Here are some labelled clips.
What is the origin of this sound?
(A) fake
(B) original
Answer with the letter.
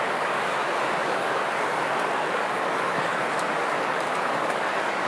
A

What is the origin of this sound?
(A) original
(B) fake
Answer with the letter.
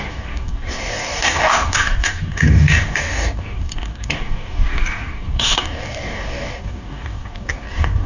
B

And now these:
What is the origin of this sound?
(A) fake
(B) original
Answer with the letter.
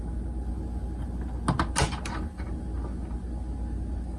B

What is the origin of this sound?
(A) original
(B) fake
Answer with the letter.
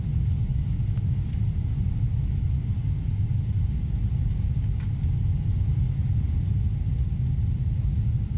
A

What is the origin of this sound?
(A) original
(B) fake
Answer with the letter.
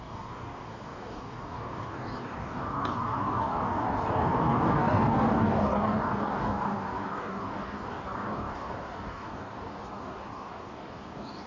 B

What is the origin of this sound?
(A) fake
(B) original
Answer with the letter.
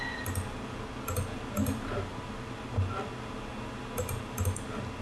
B